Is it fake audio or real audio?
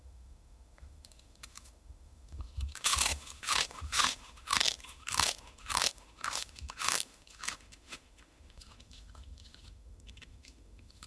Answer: fake